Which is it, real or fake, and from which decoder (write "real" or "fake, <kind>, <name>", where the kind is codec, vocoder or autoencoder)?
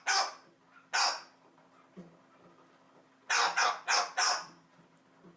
real